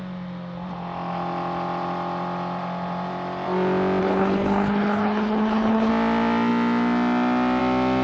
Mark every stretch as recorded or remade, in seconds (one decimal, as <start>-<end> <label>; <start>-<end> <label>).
0.0-4.0 recorded; 4.0-5.9 remade; 5.9-8.0 recorded